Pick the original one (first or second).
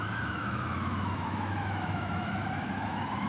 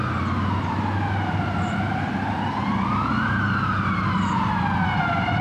second